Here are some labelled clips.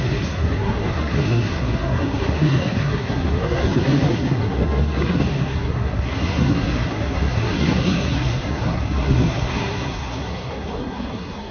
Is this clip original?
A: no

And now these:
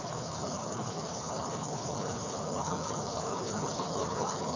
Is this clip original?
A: no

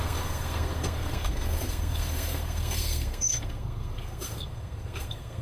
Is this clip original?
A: no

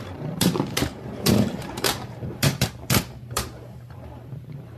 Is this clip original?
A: no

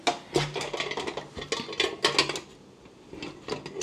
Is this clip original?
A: yes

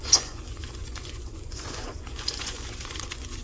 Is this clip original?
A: no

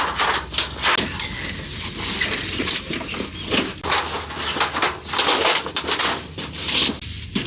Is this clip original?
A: yes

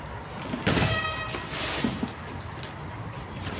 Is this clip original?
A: yes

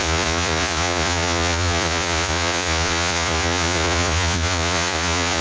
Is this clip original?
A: no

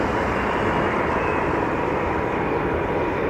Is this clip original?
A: yes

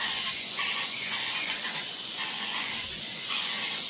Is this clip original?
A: no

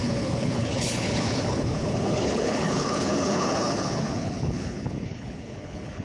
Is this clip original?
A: no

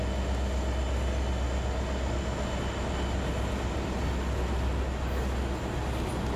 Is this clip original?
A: yes